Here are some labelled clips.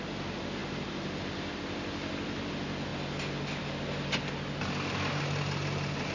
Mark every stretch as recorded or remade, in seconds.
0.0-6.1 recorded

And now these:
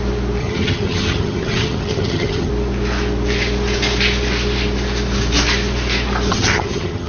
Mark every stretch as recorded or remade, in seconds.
0.0-0.4 recorded; 0.4-2.5 remade; 2.5-6.3 recorded; 6.3-7.1 remade

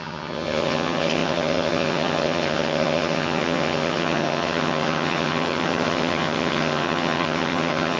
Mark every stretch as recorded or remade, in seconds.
0.0-8.0 remade

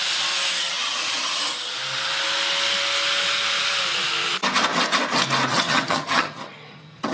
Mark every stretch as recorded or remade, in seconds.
0.0-0.6 recorded; 0.6-1.7 remade; 1.7-5.5 recorded; 5.5-7.1 remade

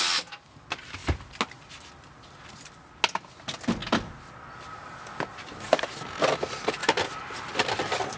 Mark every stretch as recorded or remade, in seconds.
0.0-8.2 recorded

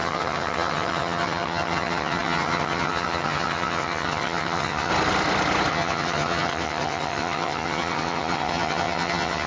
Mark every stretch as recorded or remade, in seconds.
0.0-4.9 remade; 4.9-5.7 recorded; 5.7-9.5 remade